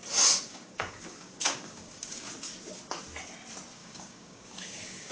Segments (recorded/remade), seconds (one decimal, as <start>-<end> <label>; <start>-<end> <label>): 0.0-0.5 recorded; 0.5-2.3 remade; 2.3-3.8 recorded; 3.8-5.1 remade